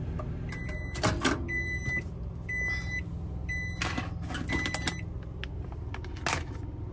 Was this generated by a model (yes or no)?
no